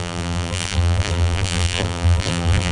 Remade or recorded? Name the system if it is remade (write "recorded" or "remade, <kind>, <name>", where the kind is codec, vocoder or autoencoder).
remade, vocoder, BigVGAN v2